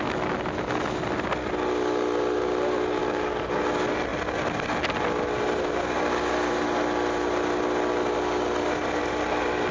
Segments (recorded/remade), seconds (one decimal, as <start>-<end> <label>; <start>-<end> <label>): 0.0-3.0 recorded; 3.0-3.6 remade; 3.6-9.7 recorded